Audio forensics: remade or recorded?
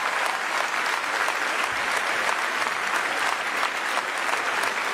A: recorded